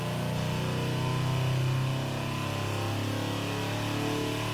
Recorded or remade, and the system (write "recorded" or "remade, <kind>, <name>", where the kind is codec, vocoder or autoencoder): recorded